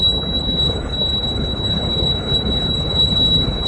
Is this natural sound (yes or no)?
no